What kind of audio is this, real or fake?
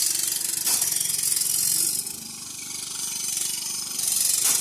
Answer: real